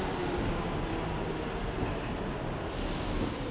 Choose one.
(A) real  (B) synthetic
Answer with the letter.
A